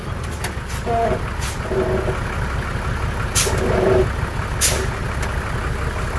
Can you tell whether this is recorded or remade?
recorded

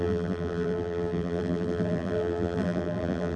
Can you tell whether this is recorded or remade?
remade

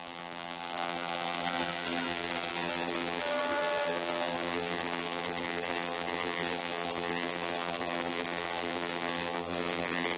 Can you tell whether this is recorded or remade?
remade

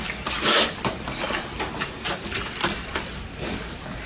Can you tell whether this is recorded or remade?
recorded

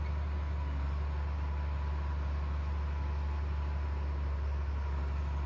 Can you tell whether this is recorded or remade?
recorded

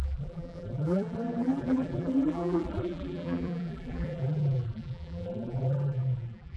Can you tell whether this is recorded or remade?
remade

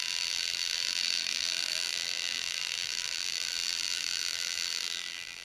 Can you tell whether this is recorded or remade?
remade